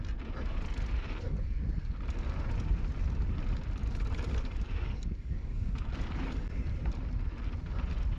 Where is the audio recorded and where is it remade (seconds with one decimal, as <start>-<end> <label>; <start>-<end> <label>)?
0.0-3.8 recorded; 3.8-6.5 remade; 6.5-8.2 recorded